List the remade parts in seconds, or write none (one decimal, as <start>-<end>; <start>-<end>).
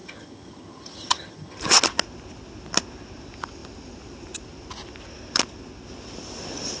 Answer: 0.0-1.6